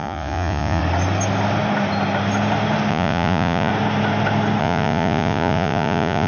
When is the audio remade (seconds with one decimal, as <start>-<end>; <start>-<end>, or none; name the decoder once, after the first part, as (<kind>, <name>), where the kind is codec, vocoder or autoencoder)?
0.0-0.8 (vocoder, Vocos); 2.9-3.7; 4.6-6.3